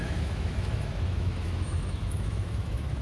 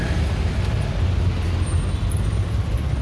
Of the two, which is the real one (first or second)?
second